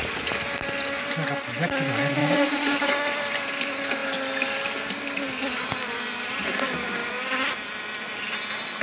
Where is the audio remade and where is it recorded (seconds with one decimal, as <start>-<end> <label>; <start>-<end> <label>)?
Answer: 0.0-2.2 recorded; 2.2-2.9 remade; 2.9-8.8 recorded